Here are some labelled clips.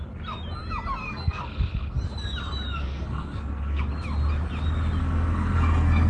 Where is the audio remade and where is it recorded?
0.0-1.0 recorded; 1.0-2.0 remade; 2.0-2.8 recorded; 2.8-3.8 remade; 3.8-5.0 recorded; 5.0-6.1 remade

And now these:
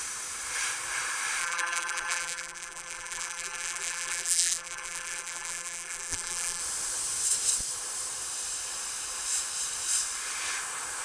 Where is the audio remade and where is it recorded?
0.0-1.4 recorded; 1.4-6.6 remade; 6.6-11.0 recorded

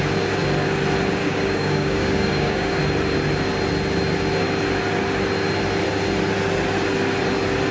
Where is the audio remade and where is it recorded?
0.0-1.2 recorded; 1.2-2.8 remade; 2.8-7.7 recorded

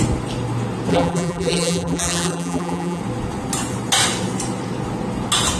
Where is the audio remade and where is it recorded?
0.0-0.9 recorded; 0.9-3.0 remade; 3.0-5.6 recorded

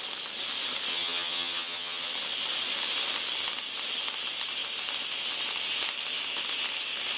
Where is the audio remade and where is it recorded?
0.0-0.9 recorded; 0.9-2.1 remade; 2.1-7.2 recorded

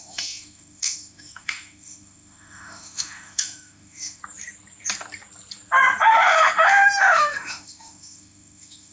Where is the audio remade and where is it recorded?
0.0-4.2 remade; 4.2-6.1 recorded; 6.1-8.9 remade